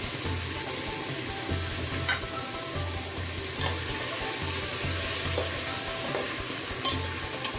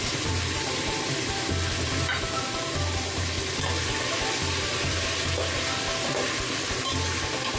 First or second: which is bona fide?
first